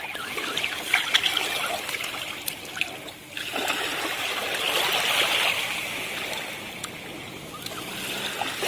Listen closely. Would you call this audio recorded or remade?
recorded